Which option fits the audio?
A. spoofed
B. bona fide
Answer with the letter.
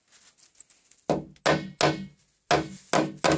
B